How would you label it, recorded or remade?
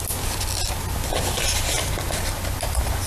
recorded